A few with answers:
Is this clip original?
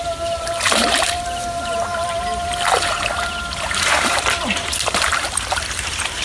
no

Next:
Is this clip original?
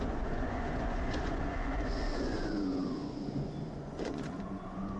no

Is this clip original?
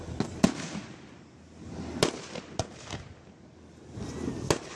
yes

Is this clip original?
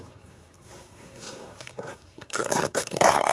no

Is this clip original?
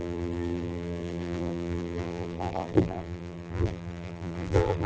no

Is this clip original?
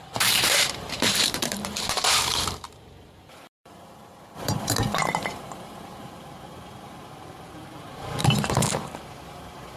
no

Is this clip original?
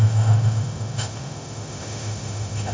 no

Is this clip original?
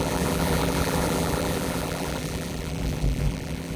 no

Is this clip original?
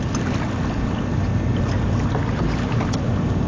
yes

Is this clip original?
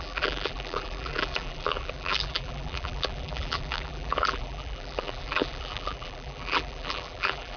no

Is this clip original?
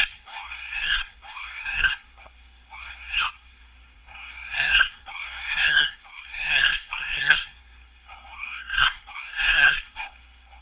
no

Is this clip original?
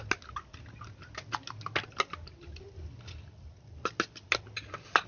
yes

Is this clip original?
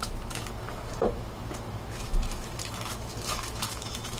no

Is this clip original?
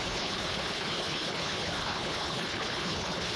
no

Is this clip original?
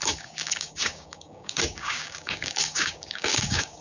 no